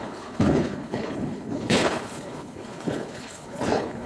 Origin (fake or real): fake